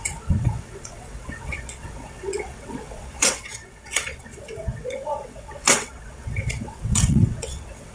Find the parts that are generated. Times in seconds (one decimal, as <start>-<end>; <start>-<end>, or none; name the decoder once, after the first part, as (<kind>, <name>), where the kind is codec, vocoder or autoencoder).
0.0-7.9 (vocoder, WaveNeXt)